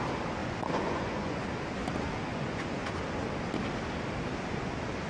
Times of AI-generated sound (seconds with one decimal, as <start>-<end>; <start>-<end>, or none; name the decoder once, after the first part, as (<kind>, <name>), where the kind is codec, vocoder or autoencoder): 0.4-1.4 (vocoder, Vocos); 2.3-2.9